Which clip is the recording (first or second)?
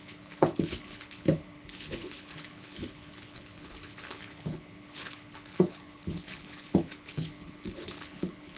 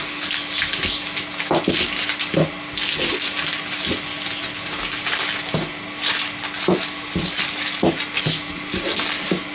second